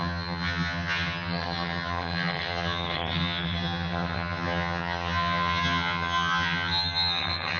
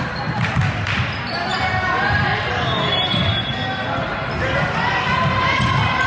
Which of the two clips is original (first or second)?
second